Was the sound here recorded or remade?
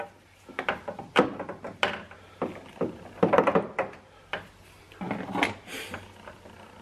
recorded